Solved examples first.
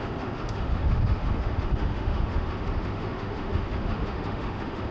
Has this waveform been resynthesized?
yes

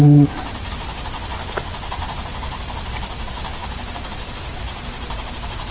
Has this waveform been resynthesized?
no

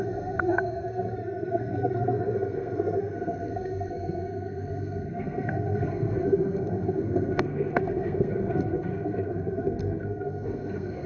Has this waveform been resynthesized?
yes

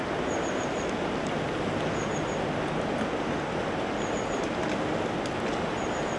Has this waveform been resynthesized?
no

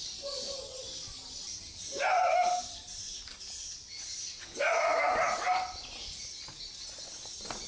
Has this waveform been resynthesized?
no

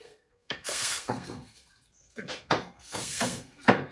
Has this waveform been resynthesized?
yes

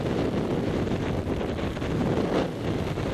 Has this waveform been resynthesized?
no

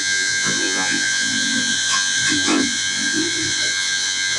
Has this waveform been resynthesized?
yes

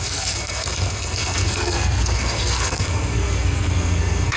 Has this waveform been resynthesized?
yes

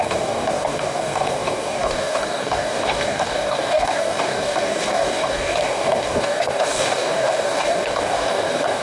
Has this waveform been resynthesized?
yes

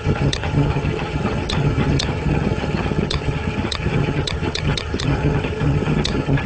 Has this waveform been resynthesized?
yes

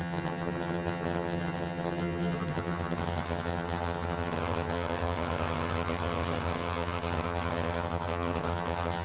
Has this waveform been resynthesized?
yes